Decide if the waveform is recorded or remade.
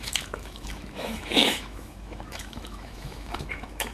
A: remade